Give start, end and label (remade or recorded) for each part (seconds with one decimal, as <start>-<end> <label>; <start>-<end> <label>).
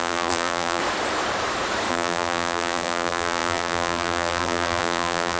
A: 0.0-0.8 remade; 0.8-1.9 recorded; 1.9-5.4 remade